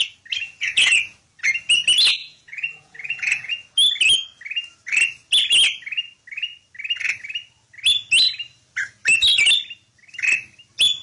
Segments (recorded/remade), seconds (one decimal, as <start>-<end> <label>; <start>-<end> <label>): 0.0-0.4 recorded; 0.4-1.0 remade; 1.0-2.2 recorded; 2.2-3.5 remade; 3.5-11.0 recorded